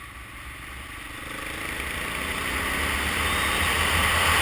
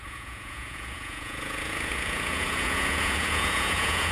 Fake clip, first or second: second